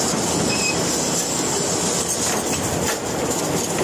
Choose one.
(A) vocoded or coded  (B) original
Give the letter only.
B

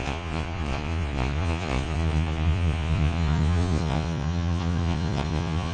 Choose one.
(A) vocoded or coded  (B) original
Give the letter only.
A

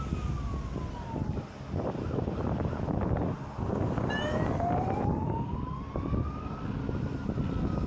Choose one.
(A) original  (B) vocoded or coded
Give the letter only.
A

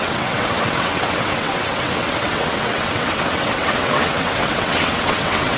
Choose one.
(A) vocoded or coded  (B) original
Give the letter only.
A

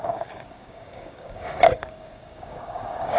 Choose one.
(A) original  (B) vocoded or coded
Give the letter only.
B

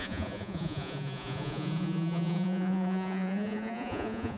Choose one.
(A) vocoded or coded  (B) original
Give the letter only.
A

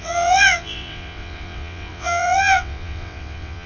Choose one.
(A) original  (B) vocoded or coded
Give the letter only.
B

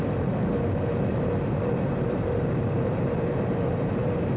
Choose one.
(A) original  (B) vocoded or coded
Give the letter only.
B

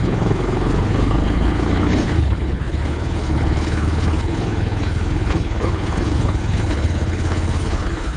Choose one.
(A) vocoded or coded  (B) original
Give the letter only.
A